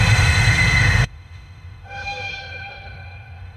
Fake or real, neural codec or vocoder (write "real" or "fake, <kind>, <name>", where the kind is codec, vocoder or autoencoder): fake, autoencoder, DAC-VAE